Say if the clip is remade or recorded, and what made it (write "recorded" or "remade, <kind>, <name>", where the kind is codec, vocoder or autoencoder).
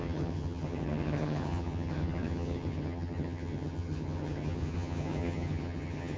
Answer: remade, vocoder, HiFi-GAN